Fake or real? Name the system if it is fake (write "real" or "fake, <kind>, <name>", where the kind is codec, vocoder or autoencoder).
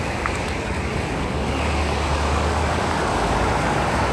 fake, codec, DAC